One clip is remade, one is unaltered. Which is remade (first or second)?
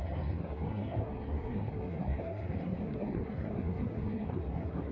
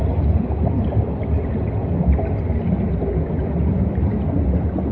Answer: first